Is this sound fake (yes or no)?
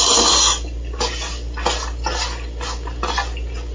no